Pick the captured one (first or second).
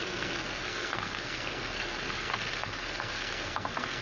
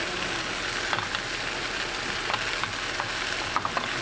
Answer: second